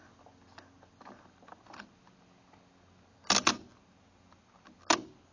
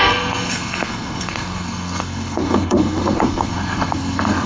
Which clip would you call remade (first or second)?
second